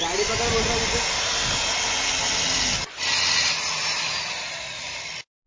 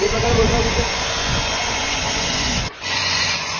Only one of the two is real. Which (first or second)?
first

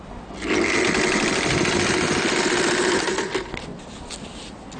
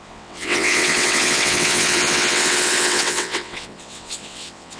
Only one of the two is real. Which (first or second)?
first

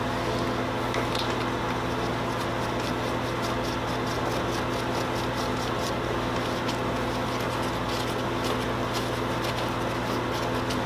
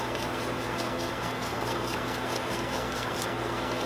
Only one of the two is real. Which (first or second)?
first